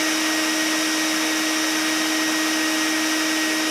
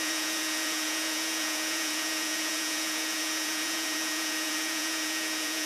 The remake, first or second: second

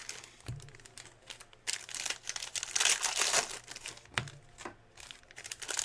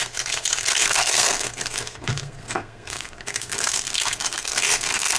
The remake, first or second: second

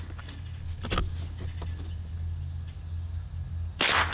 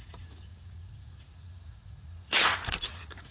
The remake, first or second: second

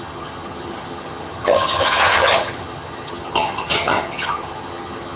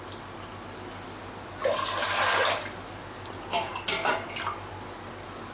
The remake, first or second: first